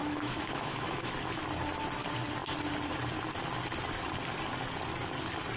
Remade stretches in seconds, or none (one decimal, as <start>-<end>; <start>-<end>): 0.0-1.1